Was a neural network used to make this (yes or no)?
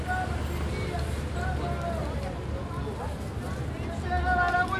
no